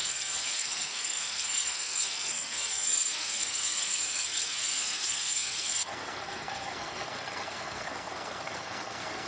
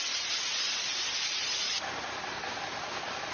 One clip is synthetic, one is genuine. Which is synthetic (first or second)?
first